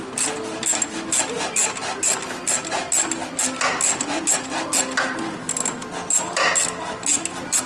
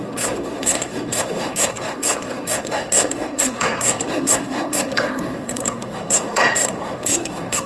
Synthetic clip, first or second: second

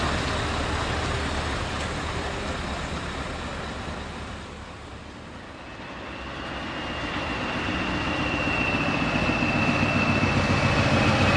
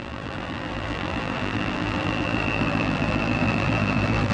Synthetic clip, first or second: second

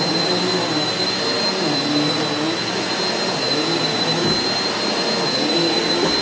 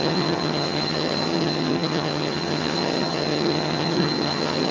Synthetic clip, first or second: second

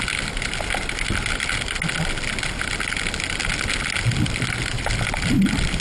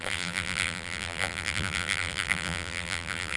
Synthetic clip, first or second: second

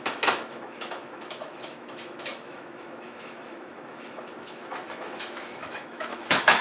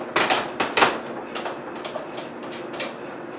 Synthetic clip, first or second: first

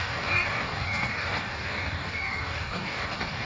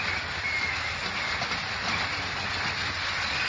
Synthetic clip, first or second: first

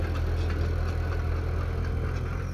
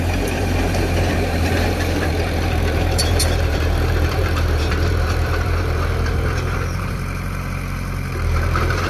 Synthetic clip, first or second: second